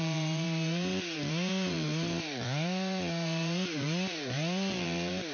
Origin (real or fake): fake